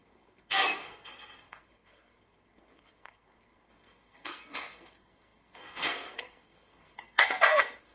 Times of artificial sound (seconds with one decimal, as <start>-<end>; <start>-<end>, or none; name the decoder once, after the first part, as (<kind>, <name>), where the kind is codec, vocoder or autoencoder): 0.0-7.9 (codec, SNAC)